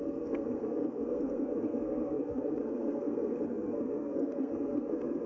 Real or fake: fake